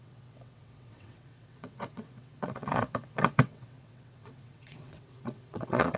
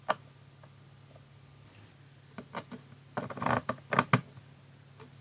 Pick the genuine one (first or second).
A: second